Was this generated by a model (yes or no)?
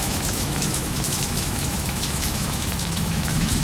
yes